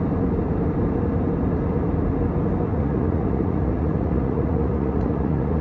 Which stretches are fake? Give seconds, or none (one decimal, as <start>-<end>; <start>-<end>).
2.7-5.6